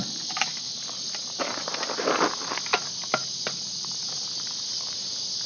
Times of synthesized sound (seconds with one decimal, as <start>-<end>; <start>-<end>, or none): none